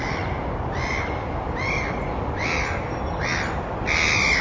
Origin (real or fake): real